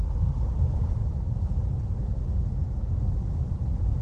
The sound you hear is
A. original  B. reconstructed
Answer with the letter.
A